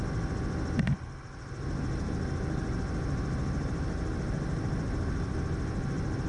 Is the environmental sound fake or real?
real